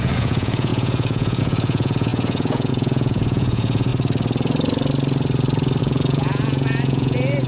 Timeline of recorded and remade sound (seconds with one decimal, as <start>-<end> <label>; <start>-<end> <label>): 0.0-3.9 remade; 3.9-5.8 recorded; 5.8-7.5 remade